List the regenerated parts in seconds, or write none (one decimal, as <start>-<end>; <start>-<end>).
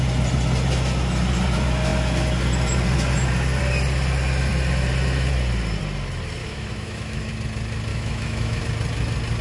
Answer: 6.4-7.3; 7.9-8.6